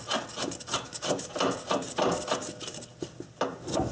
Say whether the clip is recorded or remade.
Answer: recorded